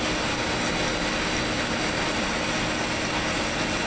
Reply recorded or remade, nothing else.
recorded